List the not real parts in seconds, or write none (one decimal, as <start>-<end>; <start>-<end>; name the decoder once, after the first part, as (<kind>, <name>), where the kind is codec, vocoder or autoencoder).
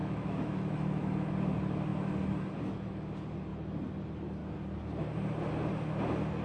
0.0-1.3 (autoencoder, DAC-VAE)